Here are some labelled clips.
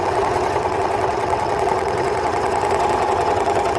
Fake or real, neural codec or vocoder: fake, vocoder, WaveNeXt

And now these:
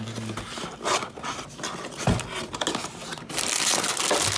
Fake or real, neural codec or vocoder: real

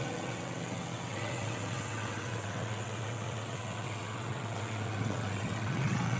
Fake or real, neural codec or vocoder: fake, vocoder, WaveNeXt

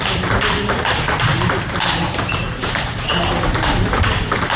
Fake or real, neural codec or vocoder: real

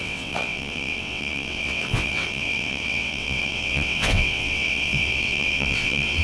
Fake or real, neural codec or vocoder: fake, vocoder, WaveNeXt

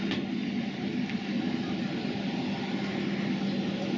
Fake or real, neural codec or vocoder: real